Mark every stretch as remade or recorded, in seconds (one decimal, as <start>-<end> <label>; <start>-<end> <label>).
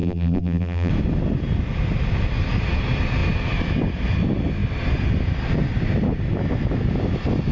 0.0-0.9 remade; 0.9-7.5 recorded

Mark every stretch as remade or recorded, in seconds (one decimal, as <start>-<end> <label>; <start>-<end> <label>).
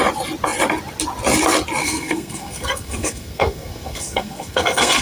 0.0-1.8 recorded; 1.8-5.0 remade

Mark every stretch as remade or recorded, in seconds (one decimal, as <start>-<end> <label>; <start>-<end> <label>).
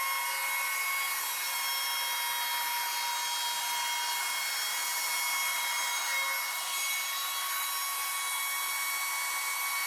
0.0-5.5 recorded; 5.5-6.0 remade; 6.0-9.9 recorded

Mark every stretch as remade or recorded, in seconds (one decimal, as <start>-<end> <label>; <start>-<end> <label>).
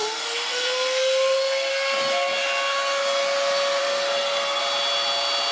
0.0-1.7 remade; 1.7-3.8 recorded; 3.8-4.6 remade; 4.6-5.5 recorded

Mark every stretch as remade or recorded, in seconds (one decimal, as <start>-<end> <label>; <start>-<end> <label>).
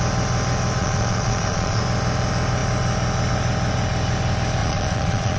0.0-0.8 recorded; 0.8-1.8 remade; 1.8-4.6 recorded; 4.6-5.4 remade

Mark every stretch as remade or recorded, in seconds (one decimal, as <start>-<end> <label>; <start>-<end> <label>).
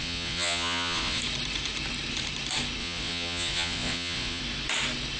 0.0-1.2 remade; 1.2-2.8 recorded; 2.8-4.4 remade; 4.4-5.2 recorded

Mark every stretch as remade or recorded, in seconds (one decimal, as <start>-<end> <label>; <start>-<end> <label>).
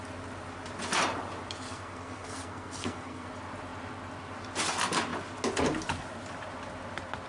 0.0-1.7 recorded; 1.7-3.3 remade; 3.3-7.3 recorded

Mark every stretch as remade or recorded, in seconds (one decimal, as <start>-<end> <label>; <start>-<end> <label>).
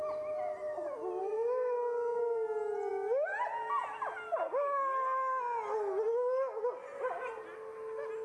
0.0-1.2 recorded; 1.2-2.2 remade; 2.2-8.2 recorded